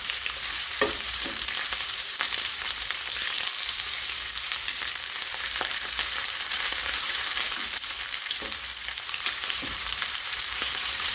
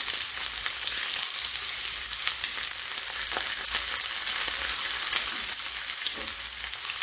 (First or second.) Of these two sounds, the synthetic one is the first